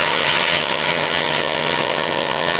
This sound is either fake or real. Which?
fake